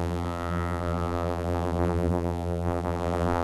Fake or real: fake